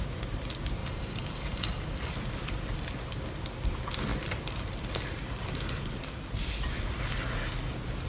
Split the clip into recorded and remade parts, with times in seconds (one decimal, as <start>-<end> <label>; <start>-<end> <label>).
0.0-0.8 recorded; 0.8-2.1 remade; 2.1-8.1 recorded